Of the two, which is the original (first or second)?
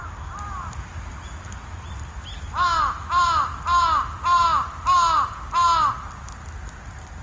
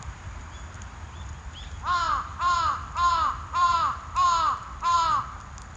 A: first